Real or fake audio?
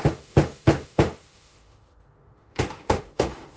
fake